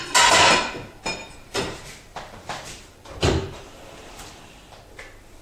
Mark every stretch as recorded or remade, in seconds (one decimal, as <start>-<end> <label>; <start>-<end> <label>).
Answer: 0.0-1.2 recorded; 1.2-4.4 remade; 4.4-5.4 recorded